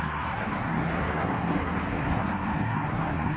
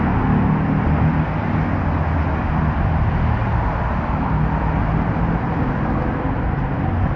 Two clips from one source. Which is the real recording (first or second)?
second